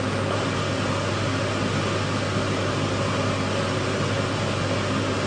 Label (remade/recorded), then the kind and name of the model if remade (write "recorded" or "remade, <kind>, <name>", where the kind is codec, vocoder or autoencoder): recorded